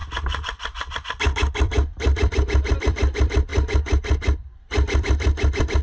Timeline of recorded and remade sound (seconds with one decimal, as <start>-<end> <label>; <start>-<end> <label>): 0.0-1.2 recorded; 1.2-3.5 remade; 3.5-4.4 recorded; 4.4-5.8 remade